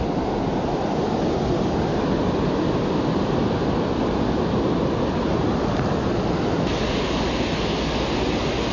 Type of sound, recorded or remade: recorded